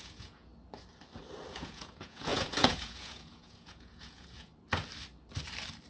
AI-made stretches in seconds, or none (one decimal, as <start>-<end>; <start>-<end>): 0.0-0.5; 1.5-4.5